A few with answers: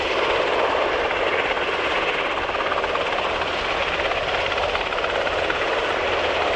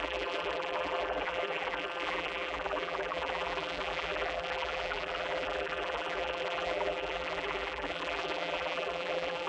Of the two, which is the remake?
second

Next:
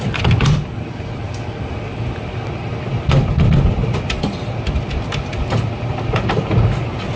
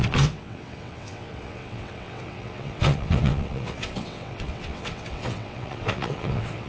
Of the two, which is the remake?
second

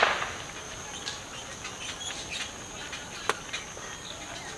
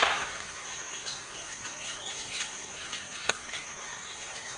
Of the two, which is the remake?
second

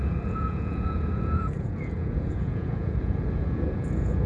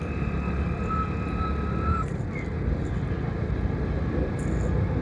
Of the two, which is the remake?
first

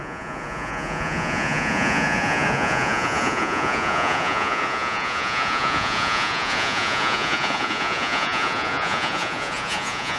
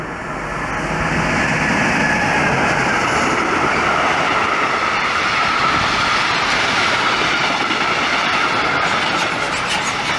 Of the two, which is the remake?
first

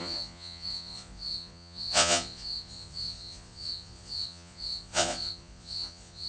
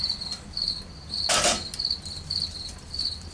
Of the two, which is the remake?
first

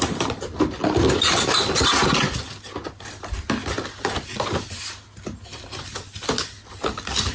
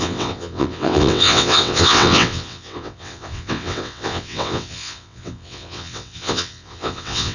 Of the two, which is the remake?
second